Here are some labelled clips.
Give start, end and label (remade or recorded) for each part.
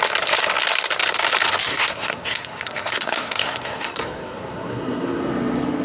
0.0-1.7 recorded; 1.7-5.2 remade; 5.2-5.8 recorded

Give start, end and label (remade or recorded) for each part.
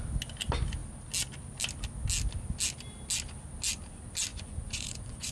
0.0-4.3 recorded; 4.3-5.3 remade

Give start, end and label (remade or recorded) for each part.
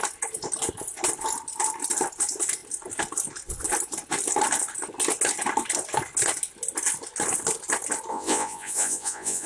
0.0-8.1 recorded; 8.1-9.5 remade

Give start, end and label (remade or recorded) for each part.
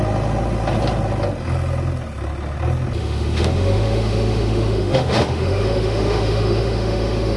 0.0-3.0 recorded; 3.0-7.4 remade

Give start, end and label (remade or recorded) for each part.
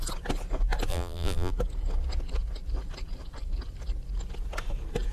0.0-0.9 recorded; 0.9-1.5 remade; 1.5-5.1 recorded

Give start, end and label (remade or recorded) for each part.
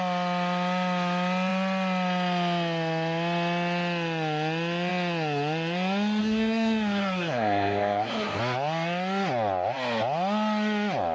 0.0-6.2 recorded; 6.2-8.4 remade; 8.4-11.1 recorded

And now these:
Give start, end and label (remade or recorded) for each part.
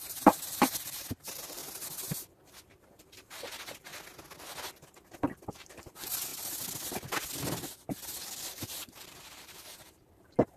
0.0-1.6 remade; 1.6-2.8 recorded; 2.8-3.9 remade; 3.9-5.5 recorded; 5.5-6.3 remade; 6.3-8.5 recorded; 8.5-10.6 remade